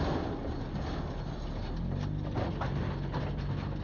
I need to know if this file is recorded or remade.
recorded